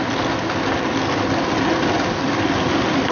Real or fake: real